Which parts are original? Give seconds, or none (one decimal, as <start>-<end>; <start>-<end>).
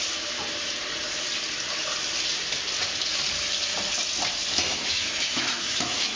0.0-4.8